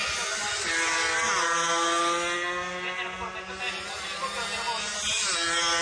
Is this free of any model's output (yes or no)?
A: yes